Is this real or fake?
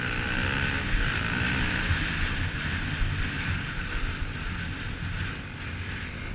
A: real